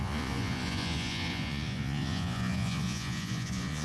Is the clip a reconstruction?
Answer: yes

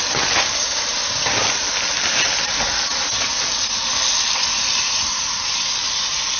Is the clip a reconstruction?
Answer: no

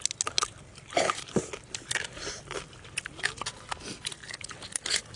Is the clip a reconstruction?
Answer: no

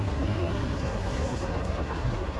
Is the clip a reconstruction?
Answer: yes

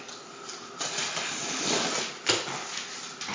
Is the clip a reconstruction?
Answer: no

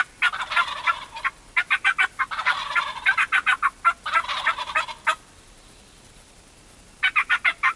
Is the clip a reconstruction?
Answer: no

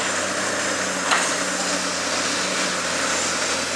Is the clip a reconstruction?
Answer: no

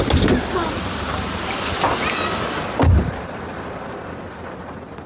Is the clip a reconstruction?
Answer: no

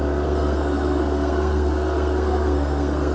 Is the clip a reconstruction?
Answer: yes